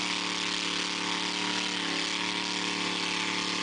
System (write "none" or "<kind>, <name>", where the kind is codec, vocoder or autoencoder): none